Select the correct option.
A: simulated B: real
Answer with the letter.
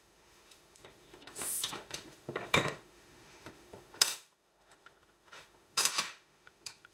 A